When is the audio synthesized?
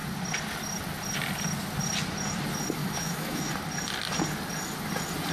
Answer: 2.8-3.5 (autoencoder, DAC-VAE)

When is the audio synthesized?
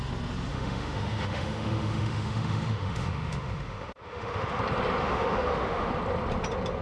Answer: 0.5-4.6 (autoencoder, DAC-VAE); 5.0-5.9